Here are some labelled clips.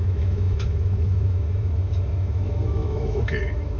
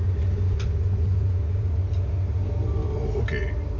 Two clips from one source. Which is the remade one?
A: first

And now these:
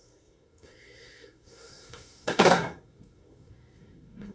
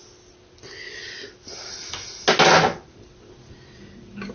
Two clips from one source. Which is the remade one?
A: first